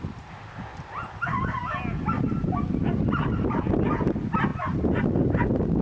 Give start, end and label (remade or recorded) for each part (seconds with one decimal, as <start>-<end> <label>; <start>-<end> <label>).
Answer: 0.0-5.8 recorded